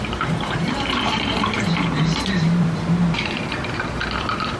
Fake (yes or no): yes